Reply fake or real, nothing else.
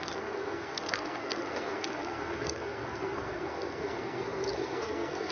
fake